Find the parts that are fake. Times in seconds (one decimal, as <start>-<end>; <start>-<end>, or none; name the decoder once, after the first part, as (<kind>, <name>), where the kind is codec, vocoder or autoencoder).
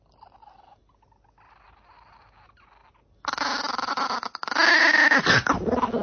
none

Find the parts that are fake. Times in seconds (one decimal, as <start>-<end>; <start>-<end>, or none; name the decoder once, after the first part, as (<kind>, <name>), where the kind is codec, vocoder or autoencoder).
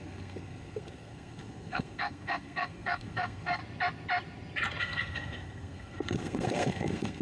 0.0-3.6 (codec, SNAC); 4.8-7.2